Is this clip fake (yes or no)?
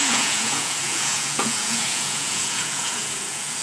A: yes